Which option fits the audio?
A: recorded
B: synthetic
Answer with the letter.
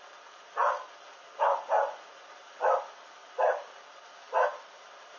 A